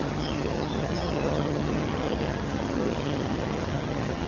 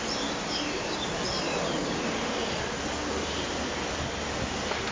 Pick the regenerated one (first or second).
first